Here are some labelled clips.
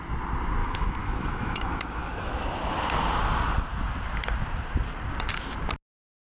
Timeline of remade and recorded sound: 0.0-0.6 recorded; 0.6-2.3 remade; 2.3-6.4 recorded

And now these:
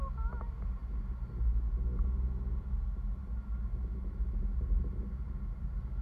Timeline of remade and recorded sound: 0.0-6.0 recorded

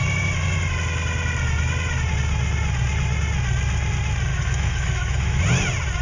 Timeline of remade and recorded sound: 0.0-4.3 recorded; 4.3-5.4 remade; 5.4-6.0 recorded

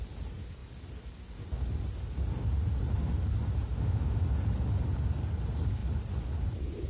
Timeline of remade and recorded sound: 0.0-3.7 recorded; 3.7-4.2 remade; 4.2-6.9 recorded

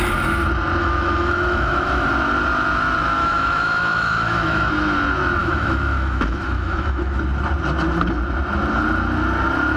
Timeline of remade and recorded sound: 0.0-0.8 recorded; 0.8-2.1 remade; 2.1-3.2 recorded; 3.2-4.7 remade; 4.7-5.4 recorded; 5.4-7.2 remade; 7.2-9.8 recorded

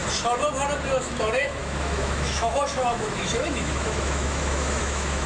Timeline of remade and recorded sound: 0.0-1.0 recorded; 1.0-5.3 remade